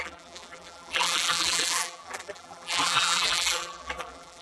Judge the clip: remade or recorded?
remade